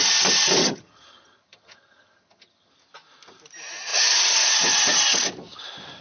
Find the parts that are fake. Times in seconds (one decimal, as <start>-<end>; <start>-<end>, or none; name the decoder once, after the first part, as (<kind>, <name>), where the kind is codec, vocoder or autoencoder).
0.6-2.7 (vocoder, HiFi-GAN)